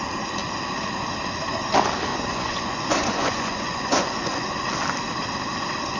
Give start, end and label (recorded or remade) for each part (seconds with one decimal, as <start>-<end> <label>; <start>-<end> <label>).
0.0-2.1 recorded; 2.1-4.5 remade; 4.5-6.0 recorded